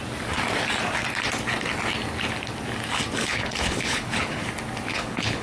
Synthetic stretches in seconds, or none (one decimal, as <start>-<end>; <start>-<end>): 3.2-4.4; 4.9-5.4